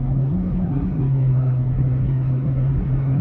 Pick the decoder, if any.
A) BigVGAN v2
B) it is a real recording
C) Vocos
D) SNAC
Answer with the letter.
D